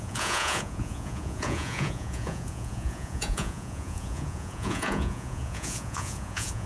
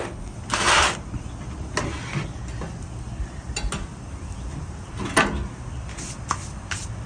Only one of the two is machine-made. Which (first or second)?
first